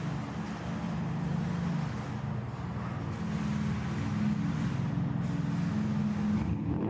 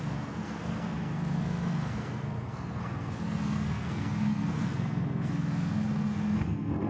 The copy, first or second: second